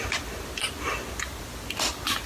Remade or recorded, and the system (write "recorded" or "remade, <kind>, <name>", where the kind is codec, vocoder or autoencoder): recorded